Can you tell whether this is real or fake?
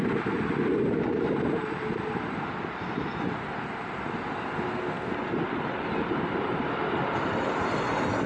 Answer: real